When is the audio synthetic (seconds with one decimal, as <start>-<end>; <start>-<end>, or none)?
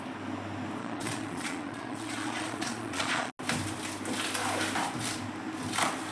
0.8-3.3